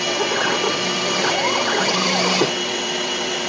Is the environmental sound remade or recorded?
remade